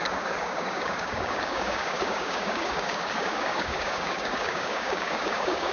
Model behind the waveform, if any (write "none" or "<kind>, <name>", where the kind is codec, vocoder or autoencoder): codec, DAC